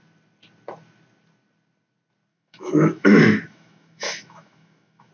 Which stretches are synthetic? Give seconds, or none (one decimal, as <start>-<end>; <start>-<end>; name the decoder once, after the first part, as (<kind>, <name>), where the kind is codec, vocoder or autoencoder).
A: 2.3-5.1 (autoencoder, DAC-VAE)